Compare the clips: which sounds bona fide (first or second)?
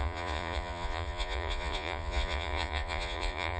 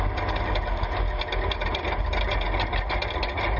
second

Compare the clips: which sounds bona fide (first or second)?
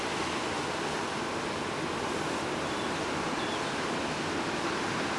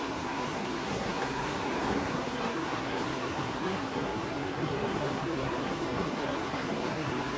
first